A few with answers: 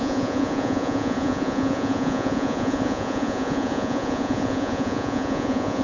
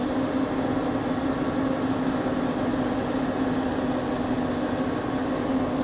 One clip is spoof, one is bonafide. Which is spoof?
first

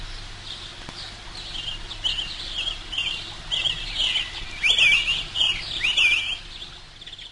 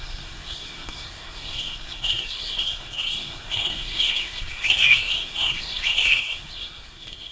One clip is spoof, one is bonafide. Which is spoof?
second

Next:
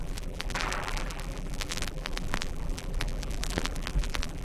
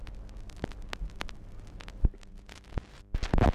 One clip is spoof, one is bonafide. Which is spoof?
first